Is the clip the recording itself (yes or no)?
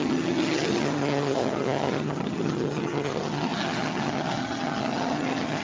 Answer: no